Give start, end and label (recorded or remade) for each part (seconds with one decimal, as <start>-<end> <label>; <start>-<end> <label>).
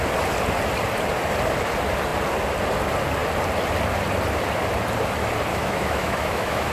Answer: 0.0-5.5 recorded; 5.5-6.7 remade